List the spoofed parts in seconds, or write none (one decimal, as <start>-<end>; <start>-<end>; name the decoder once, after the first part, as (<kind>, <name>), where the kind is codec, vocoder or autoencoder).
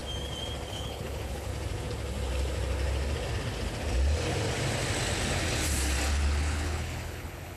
0.7-1.5 (codec, HILCodec); 6.1-7.6